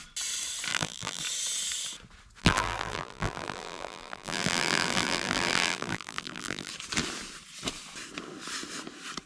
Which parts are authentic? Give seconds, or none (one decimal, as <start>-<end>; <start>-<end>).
0.0-0.7; 1.2-2.4; 6.7-9.3